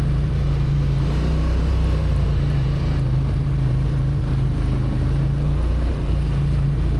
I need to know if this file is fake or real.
fake